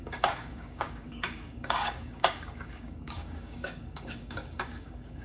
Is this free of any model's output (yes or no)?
no